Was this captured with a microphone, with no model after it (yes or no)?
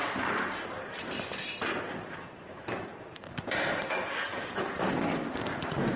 no